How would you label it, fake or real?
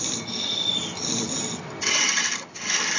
real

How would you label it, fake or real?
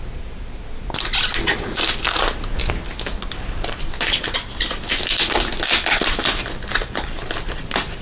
real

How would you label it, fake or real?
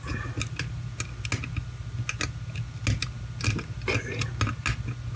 real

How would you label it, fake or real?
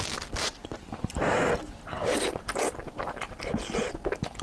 real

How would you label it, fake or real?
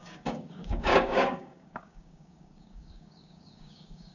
fake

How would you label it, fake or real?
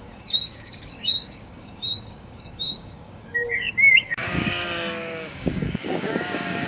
fake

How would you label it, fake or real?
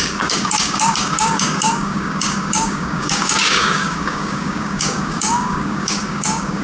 fake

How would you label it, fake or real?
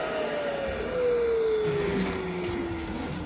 real